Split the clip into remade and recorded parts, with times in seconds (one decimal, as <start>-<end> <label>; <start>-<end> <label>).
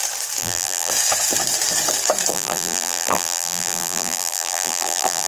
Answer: 0.0-0.4 recorded; 0.4-0.9 remade; 0.9-2.3 recorded; 2.3-5.3 remade